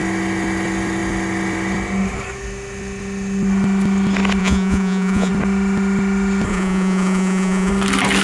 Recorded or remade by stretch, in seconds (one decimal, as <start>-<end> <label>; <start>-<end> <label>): 0.0-4.4 recorded; 4.4-5.3 remade; 5.3-6.5 recorded; 6.5-7.7 remade; 7.7-8.2 recorded